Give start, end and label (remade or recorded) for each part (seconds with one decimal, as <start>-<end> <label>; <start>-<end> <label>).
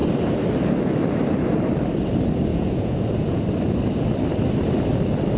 0.0-2.5 recorded; 2.5-3.4 remade; 3.4-5.4 recorded